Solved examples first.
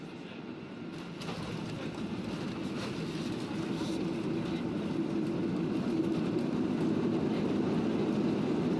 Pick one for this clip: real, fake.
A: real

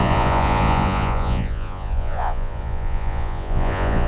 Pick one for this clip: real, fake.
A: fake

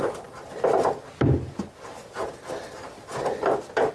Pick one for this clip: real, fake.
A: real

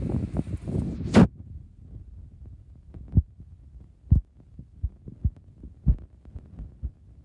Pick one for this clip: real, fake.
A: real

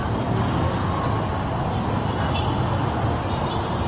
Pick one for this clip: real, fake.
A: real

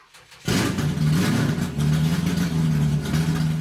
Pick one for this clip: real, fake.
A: real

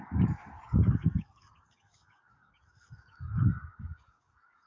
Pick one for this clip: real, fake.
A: fake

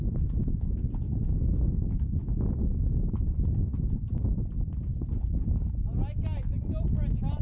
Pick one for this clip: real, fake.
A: real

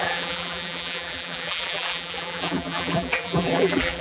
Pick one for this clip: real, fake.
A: fake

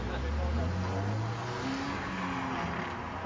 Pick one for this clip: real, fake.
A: real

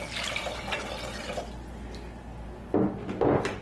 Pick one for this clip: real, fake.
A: real